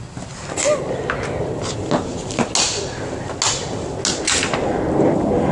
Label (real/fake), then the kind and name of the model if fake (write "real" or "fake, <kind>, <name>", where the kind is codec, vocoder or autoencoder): real